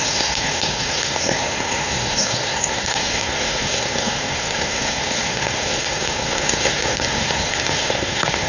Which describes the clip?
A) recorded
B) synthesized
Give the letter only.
B